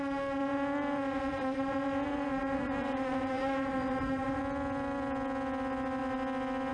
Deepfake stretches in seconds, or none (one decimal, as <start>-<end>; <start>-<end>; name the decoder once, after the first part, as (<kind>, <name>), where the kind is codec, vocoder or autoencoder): 0.4-4.4 (vocoder, Vocos)